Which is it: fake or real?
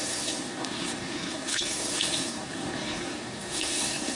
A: fake